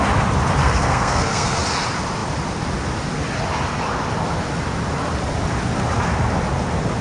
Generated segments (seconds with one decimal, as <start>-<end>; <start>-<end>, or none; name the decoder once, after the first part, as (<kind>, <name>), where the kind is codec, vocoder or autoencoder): 0.6-1.6 (codec, SNAC)